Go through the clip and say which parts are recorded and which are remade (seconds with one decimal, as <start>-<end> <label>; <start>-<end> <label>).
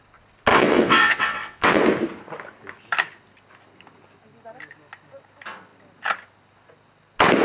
0.0-0.5 recorded; 0.5-1.8 remade; 1.8-7.4 recorded